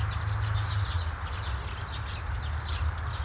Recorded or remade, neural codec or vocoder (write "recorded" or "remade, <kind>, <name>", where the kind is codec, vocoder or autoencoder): recorded